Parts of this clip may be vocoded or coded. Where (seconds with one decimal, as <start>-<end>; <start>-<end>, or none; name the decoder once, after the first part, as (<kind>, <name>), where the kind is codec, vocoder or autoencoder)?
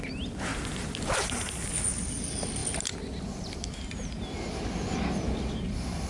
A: none